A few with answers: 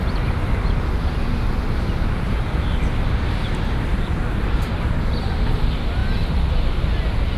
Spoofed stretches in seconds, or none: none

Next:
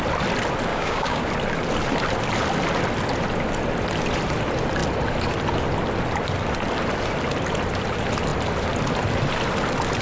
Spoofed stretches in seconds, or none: 0.7-1.3 (codec, DAC)

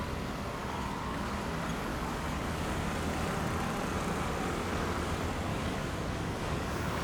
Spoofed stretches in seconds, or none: 0.6-1.4 (codec, DAC); 1.9-2.7; 5.5-7.0